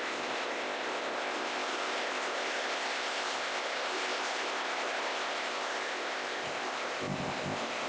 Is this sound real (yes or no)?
no